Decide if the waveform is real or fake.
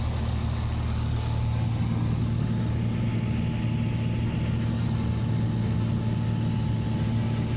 real